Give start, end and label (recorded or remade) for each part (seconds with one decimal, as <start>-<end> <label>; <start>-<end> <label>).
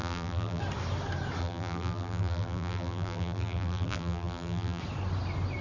0.0-0.6 remade; 0.6-1.4 recorded; 1.4-4.8 remade; 4.8-5.6 recorded